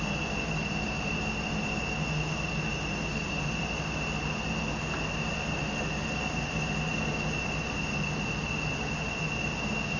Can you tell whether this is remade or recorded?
recorded